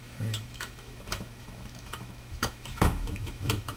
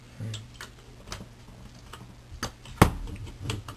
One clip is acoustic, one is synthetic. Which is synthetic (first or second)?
first